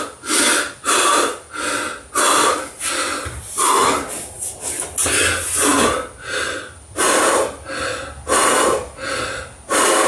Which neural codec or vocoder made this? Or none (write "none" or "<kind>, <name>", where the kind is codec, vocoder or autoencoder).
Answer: none